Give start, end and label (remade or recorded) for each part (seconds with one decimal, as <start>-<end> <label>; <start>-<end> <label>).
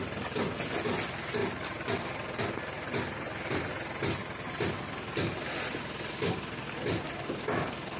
0.0-8.0 recorded